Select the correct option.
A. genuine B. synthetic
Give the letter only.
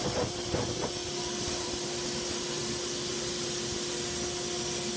A